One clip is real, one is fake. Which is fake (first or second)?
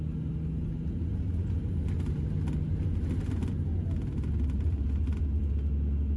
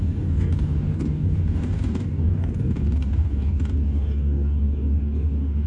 second